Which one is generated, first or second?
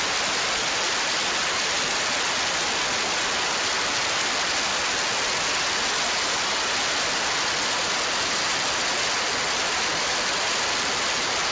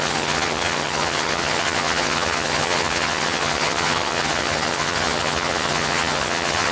second